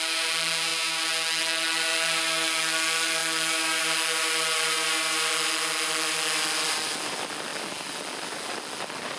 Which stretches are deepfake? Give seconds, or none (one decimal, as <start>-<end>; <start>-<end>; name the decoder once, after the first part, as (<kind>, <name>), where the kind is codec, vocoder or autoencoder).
none